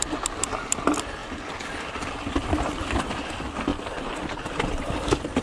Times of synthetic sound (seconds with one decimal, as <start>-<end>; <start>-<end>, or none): 3.7-4.9